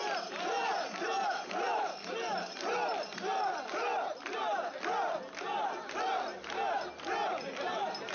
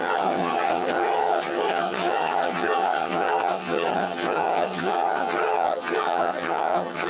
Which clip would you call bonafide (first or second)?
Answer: first